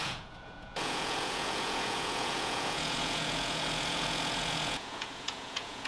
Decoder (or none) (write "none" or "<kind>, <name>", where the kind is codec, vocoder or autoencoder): vocoder, Vocos